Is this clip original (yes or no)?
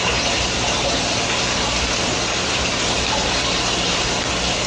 yes